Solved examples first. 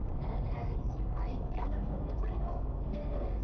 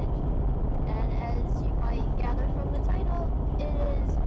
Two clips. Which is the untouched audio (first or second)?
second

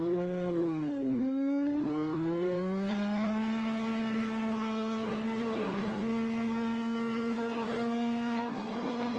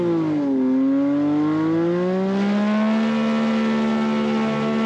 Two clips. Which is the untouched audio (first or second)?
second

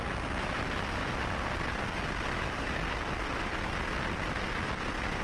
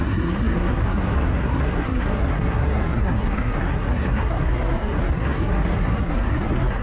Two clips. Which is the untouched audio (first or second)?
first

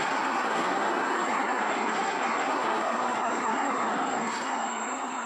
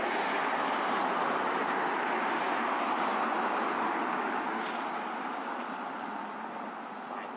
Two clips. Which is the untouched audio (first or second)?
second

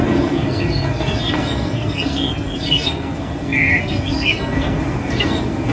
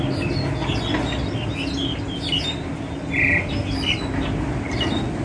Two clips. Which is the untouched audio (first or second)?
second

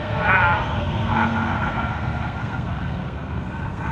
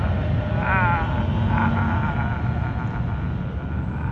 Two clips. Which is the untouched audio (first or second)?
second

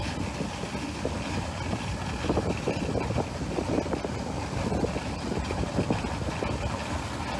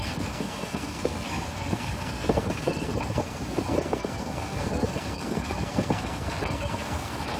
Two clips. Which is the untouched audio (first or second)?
first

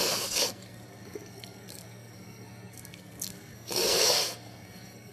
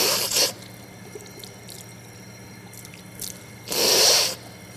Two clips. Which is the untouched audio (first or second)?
second